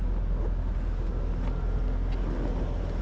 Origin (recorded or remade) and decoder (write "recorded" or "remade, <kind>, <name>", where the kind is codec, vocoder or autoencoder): recorded